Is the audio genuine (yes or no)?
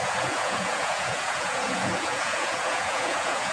no